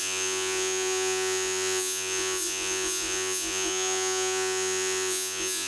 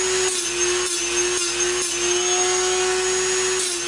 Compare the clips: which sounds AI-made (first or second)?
first